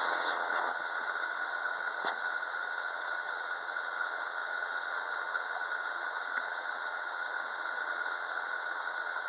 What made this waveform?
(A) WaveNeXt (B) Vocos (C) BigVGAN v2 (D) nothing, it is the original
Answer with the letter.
A